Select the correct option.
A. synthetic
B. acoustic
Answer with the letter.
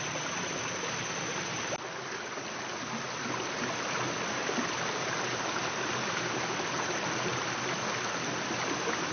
B